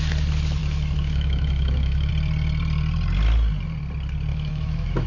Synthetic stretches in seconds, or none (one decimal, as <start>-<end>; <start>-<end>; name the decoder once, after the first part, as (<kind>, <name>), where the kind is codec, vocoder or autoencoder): 0.6-2.1 (autoencoder, DAC-VAE); 4.3-5.1